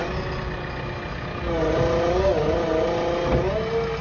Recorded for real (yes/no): yes